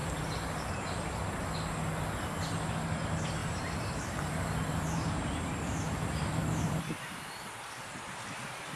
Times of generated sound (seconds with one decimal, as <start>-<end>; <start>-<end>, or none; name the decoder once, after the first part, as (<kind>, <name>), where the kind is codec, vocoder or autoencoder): 0.0-0.7 (vocoder, BigVGAN v2); 3.4-6.8